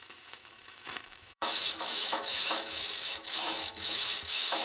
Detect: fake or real fake